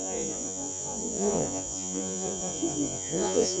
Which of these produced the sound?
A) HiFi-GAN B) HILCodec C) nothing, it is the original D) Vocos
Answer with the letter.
D